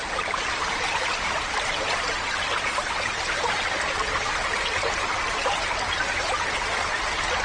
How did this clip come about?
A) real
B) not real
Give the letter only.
A